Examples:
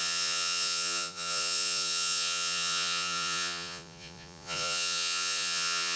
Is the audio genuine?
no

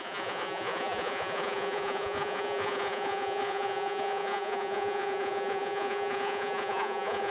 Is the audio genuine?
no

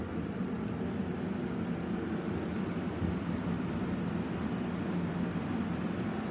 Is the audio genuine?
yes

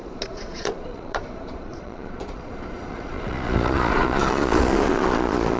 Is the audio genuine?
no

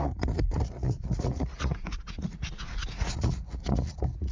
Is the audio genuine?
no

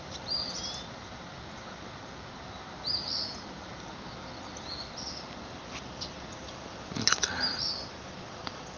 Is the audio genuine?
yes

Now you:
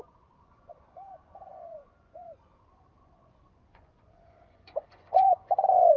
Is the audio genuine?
no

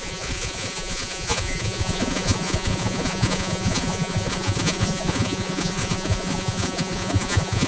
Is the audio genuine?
no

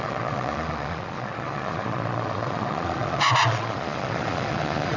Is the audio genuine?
no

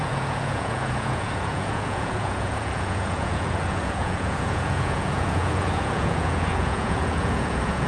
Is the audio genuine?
no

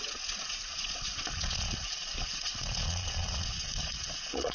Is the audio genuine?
no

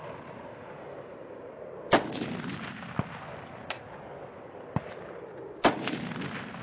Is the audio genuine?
yes